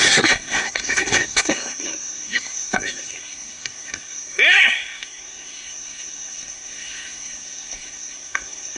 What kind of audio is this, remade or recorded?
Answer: remade